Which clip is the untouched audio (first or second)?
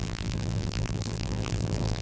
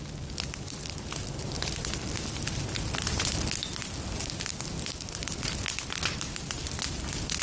second